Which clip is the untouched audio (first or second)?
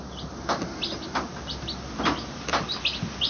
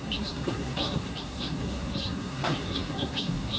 first